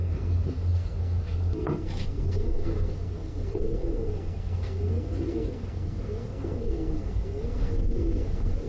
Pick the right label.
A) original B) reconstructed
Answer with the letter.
B